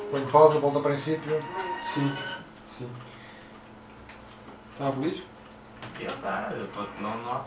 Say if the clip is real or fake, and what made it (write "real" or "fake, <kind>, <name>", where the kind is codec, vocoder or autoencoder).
real